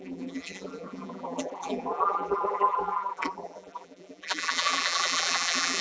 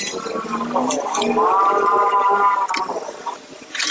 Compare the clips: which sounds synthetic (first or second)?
first